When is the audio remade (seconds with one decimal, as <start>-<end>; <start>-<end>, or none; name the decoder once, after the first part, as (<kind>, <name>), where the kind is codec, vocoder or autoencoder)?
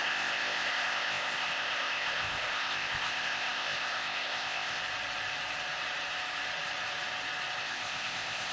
0.0-4.8 (codec, ZipCodec); 7.6-8.5